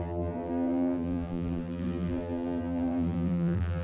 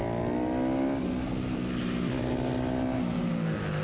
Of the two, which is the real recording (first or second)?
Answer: second